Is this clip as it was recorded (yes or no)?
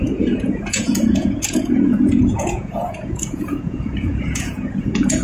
no